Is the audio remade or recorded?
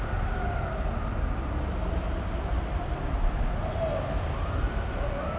recorded